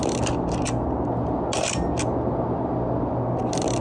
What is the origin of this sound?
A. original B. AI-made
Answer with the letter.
A